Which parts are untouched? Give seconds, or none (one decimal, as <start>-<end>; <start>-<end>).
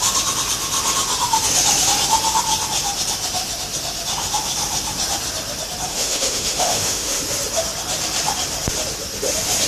0.0-5.9; 7.2-9.7